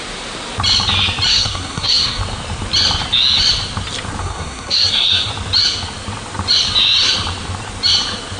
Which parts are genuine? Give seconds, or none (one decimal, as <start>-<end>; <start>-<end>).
0.0-1.3; 2.2-4.2; 5.3-8.4